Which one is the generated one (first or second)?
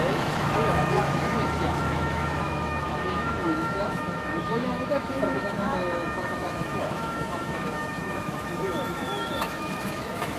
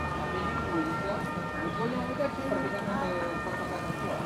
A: first